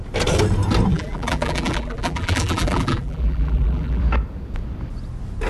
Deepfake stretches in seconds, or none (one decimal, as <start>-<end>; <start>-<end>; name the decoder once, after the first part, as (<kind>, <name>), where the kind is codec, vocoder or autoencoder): 0.9-4.0 (vocoder, BigVGAN v2)